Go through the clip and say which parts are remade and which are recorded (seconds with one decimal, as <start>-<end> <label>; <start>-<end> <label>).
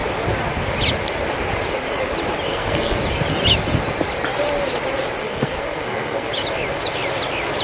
0.0-2.5 recorded; 2.5-3.0 remade; 3.0-5.2 recorded; 5.2-6.3 remade; 6.3-7.6 recorded